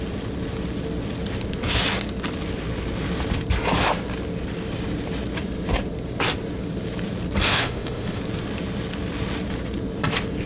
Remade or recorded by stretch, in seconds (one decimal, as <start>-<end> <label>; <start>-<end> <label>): 0.0-7.5 recorded; 7.5-8.2 remade; 8.2-10.5 recorded

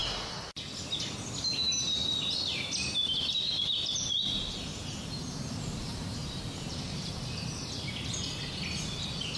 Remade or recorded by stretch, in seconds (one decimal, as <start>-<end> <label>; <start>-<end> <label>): 0.0-4.7 recorded; 4.7-5.2 remade; 5.2-5.8 recorded; 5.8-7.1 remade; 7.1-9.4 recorded

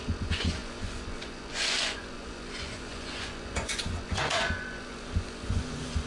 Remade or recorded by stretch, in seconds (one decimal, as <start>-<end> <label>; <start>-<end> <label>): 0.0-6.1 remade

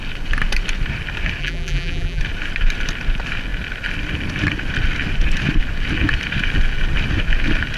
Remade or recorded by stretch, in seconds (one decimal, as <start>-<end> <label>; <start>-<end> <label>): 0.0-1.4 recorded; 1.4-2.2 remade; 2.2-7.8 recorded

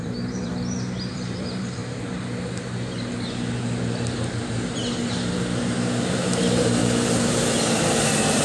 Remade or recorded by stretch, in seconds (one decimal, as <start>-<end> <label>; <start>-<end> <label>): 0.0-0.5 remade; 0.5-1.1 recorded; 1.1-1.8 remade; 1.8-5.6 recorded; 5.6-6.8 remade; 6.8-8.4 recorded

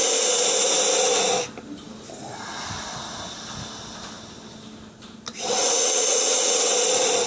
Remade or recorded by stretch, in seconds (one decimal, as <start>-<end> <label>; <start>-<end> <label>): 0.0-5.6 recorded; 5.6-6.6 remade; 6.6-7.3 recorded